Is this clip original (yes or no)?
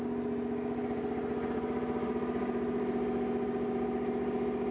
yes